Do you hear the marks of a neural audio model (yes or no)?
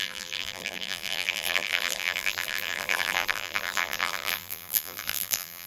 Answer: yes